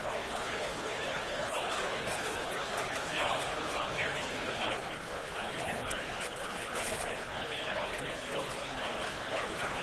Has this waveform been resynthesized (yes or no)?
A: yes